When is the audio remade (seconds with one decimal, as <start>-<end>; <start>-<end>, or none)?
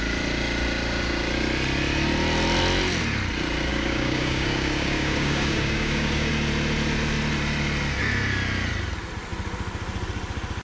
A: 3.7-6.3